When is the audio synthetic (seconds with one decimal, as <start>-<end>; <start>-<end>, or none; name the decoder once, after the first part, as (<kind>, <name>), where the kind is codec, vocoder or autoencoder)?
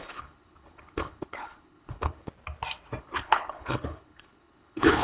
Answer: 0.0-2.3 (codec, HILCodec); 3.0-5.0